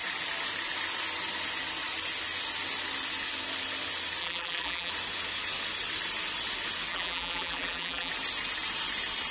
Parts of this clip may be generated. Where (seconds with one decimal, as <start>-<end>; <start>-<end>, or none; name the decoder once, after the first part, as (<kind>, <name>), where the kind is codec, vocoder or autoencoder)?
4.2-4.9 (vocoder, BigVGAN v2); 6.9-8.1